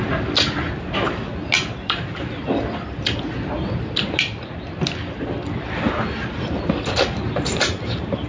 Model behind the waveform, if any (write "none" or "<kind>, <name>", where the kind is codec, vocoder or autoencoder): none